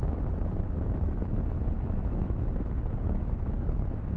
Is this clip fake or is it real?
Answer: fake